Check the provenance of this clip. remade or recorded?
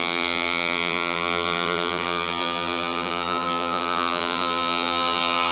remade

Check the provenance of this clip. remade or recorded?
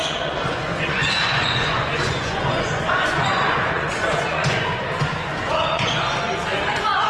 remade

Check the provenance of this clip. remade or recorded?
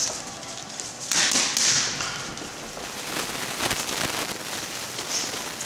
recorded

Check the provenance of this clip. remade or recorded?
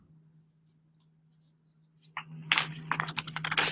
recorded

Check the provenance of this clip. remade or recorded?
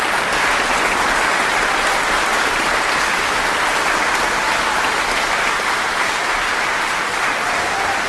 recorded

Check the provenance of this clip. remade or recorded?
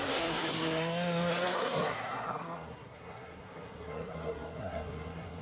remade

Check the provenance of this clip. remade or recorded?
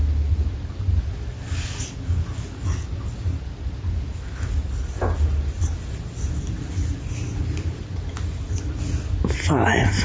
recorded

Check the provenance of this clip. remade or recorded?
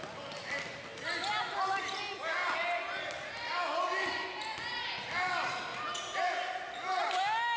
recorded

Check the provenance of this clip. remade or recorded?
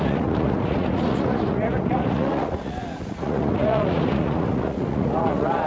remade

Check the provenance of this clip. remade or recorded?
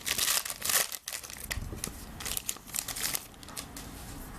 recorded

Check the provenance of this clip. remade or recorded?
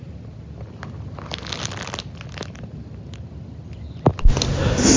recorded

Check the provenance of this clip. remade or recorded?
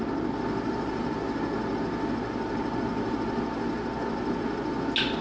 recorded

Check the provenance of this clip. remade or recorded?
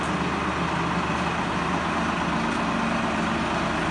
recorded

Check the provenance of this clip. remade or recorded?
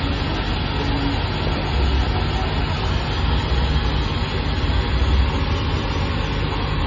recorded